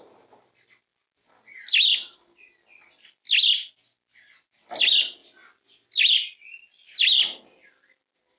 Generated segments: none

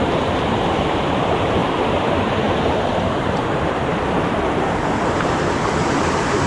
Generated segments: 0.0-6.5

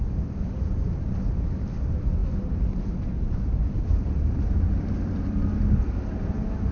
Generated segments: none

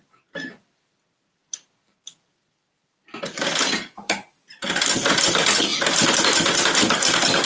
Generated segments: 0.6-5.1

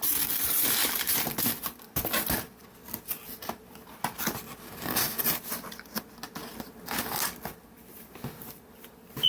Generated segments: none

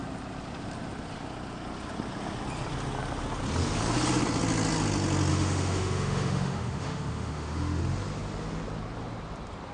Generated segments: 5.3-7.8